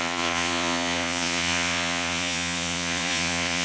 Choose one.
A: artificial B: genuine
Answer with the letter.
A